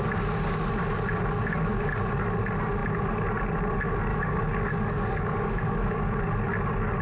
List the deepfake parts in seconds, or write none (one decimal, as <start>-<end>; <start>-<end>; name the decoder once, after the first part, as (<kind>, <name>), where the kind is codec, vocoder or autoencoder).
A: 4.1-6.2 (codec, DAC)